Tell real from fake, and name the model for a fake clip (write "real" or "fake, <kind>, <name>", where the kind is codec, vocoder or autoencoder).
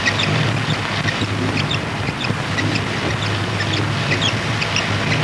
real